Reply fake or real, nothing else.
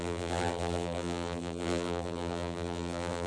fake